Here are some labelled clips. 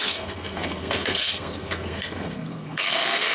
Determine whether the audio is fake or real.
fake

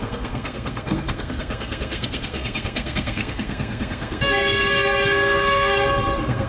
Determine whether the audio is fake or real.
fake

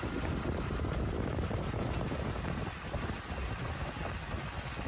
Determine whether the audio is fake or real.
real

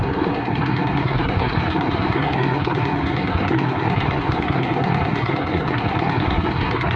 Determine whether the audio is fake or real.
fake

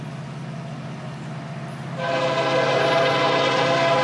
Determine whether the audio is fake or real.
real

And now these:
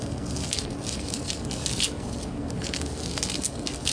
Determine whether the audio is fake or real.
fake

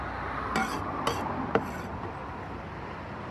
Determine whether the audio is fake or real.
real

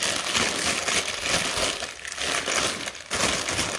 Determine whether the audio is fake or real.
real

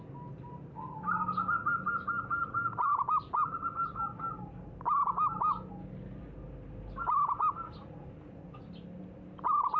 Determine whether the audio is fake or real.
real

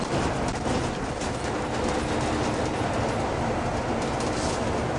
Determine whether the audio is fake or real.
real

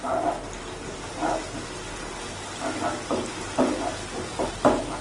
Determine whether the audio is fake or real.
real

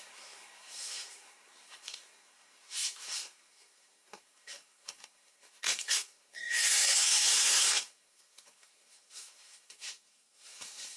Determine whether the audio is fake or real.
fake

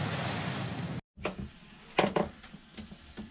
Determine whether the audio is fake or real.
real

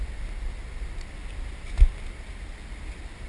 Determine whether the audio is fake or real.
real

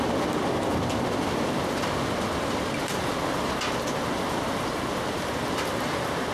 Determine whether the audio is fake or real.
real